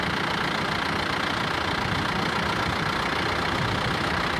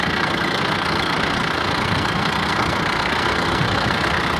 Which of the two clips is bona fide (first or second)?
first